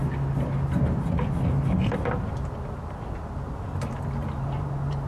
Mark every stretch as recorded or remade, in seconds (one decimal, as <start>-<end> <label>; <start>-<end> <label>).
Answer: 0.0-1.9 recorded; 1.9-5.1 remade